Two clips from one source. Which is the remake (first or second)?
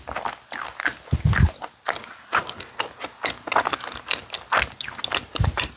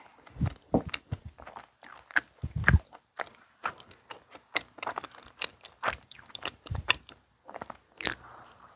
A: second